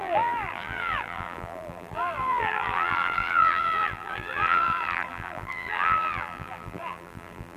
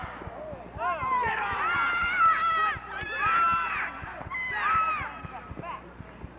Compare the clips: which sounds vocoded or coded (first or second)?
first